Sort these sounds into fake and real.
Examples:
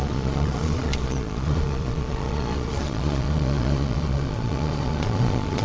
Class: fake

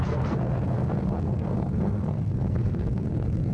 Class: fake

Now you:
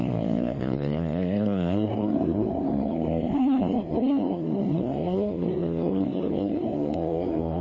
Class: fake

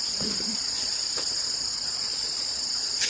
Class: fake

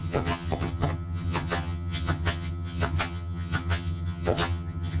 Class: fake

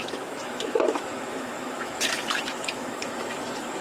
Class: fake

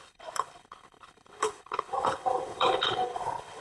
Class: fake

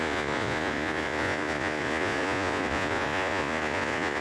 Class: fake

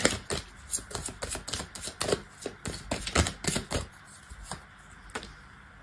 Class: real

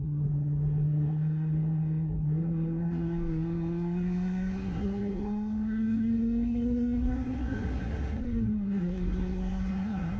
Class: fake